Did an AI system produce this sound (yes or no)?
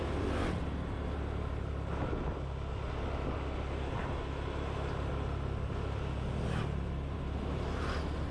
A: no